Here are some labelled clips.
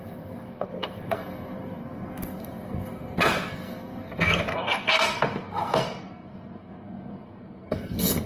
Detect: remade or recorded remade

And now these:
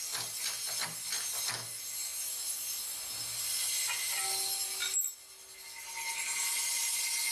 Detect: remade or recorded recorded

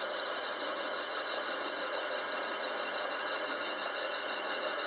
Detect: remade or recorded remade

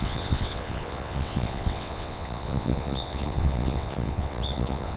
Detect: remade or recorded remade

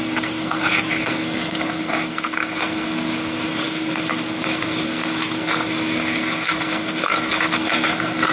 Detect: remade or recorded remade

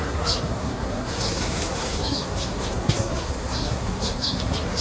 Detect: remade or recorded remade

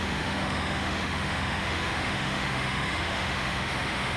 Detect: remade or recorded remade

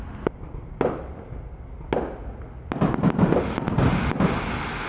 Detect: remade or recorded recorded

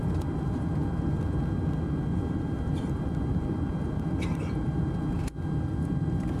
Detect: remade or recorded recorded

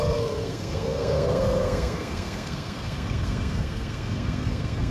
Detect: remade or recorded remade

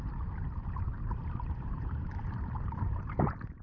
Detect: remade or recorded remade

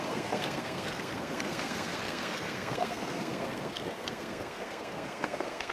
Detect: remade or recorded remade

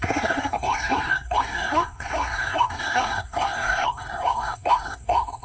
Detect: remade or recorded remade